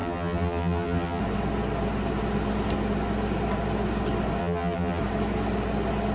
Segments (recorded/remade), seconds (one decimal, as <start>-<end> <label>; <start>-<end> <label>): 0.0-1.2 remade; 1.2-4.4 recorded; 4.4-5.0 remade; 5.0-6.1 recorded